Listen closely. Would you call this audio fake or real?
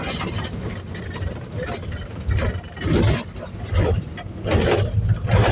real